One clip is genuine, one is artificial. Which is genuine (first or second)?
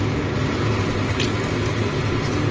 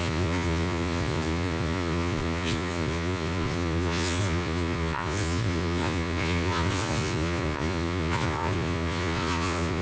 first